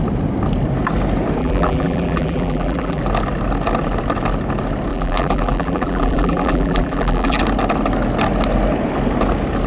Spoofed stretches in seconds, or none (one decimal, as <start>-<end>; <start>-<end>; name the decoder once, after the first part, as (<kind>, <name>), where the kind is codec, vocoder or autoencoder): 1.4-3.0 (vocoder, BigVGAN v2); 4.9-7.4